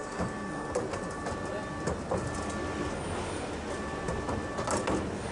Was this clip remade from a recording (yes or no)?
no